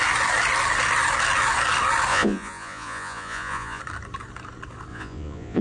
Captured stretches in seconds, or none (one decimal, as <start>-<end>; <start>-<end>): 0.0-2.1; 3.8-4.9